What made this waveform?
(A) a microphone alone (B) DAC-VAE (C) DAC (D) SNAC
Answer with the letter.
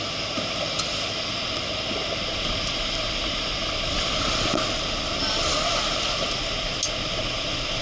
A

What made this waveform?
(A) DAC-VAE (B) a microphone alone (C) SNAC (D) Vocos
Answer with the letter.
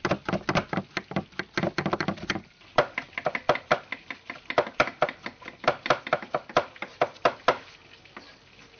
B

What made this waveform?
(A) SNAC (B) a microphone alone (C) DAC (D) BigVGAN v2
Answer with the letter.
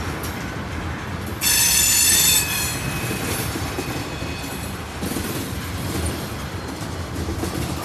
D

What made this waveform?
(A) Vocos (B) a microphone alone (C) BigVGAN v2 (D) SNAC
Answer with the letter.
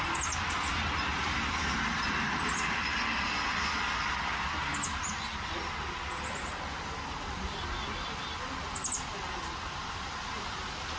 B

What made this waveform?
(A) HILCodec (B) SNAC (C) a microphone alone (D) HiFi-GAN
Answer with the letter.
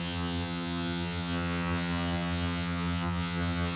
D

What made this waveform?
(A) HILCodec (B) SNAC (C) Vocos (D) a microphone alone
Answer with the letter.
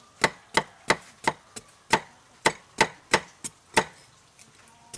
D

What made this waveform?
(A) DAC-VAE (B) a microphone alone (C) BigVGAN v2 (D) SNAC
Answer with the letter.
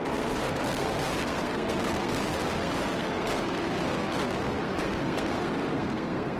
D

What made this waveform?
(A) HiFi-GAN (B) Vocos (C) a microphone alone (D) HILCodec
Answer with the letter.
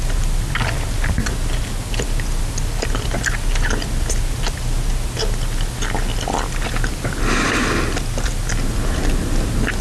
C